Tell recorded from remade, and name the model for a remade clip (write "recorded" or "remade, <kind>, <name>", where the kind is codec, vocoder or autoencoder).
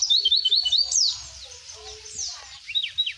recorded